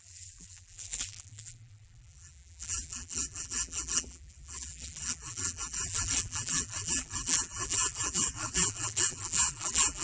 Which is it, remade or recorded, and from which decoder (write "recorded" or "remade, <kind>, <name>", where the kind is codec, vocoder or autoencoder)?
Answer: remade, vocoder, BigVGAN v2